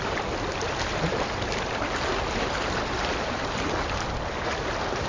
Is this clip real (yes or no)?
yes